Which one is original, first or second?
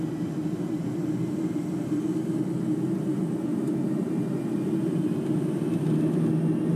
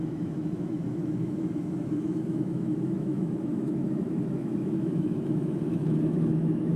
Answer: first